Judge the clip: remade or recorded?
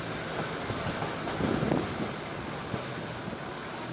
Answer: recorded